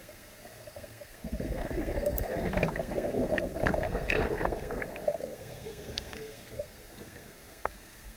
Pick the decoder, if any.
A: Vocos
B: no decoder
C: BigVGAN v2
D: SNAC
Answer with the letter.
D